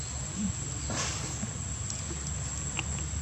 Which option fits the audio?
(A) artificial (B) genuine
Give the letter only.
B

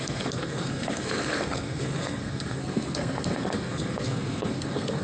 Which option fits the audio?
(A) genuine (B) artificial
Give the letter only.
B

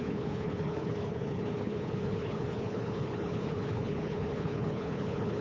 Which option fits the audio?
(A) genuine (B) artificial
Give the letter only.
B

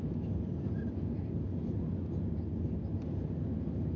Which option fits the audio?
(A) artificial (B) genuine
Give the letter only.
B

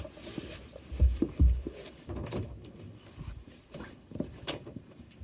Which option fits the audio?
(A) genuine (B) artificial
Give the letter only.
B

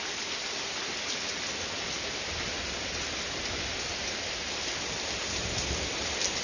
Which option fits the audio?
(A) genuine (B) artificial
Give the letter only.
A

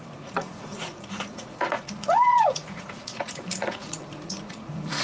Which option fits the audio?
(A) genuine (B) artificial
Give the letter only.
B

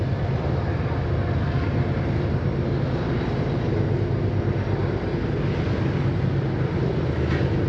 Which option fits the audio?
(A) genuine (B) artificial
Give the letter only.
A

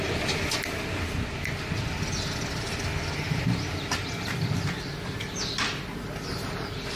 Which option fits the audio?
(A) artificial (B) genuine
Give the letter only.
A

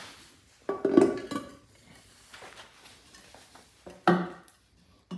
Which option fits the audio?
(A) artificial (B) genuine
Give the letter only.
B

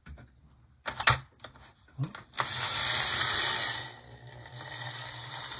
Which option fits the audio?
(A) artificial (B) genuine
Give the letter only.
B